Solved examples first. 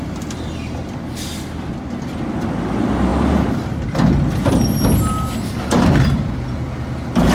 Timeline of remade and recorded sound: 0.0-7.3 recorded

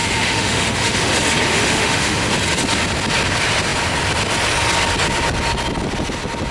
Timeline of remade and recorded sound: 0.0-1.1 remade; 1.1-1.5 recorded; 1.5-2.3 remade; 2.3-6.5 recorded

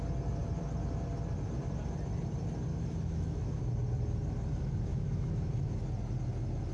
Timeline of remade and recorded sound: 0.0-2.7 recorded; 2.7-3.6 remade; 3.6-4.9 recorded; 4.9-5.8 remade; 5.8-6.7 recorded

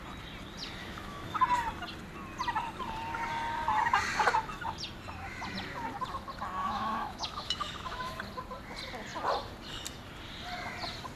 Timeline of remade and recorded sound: 0.0-0.8 recorded; 0.8-1.4 remade; 1.4-6.6 recorded; 6.6-8.2 remade; 8.2-11.2 recorded

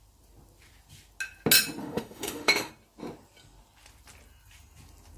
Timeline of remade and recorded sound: 0.0-1.8 recorded; 1.8-2.7 remade; 2.7-5.2 recorded

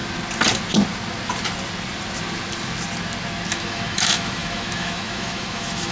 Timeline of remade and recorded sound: 0.0-3.5 recorded; 3.5-5.9 remade

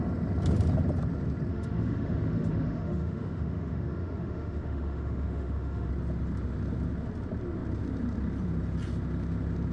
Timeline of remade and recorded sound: 0.0-1.5 recorded; 1.5-5.9 remade; 5.9-9.7 recorded